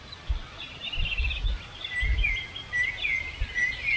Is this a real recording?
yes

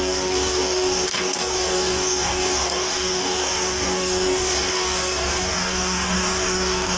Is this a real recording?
no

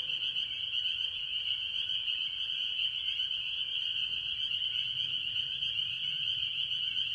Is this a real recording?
yes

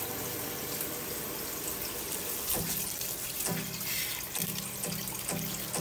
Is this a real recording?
yes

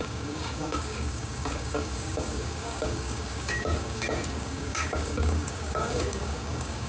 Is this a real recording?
no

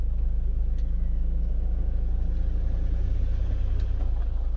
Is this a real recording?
yes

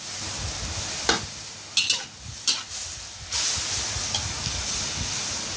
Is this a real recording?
yes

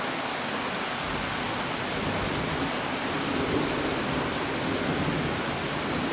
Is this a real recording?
yes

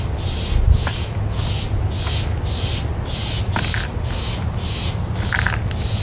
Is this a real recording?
yes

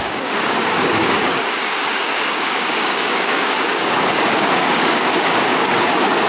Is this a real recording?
no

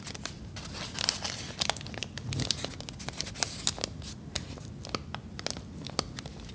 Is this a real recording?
yes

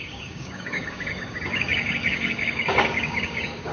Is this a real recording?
no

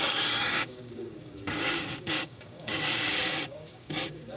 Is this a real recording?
no